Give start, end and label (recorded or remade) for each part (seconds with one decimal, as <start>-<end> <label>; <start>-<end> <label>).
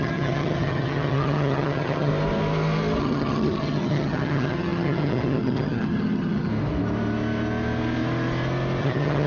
0.0-2.1 remade; 2.1-3.0 recorded; 3.0-6.5 remade; 6.5-8.8 recorded; 8.8-9.3 remade